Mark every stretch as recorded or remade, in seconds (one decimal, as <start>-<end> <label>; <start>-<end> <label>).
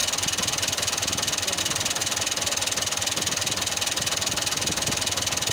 0.0-5.5 recorded